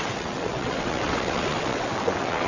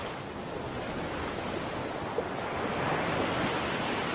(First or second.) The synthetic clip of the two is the first